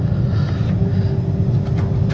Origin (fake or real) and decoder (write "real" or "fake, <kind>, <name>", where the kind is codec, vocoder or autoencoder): real